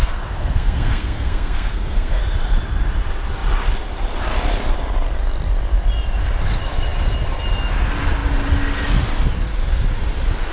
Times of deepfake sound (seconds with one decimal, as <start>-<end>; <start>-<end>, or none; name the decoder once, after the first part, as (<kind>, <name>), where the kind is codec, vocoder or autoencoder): 0.0-2.2 (codec, SNAC)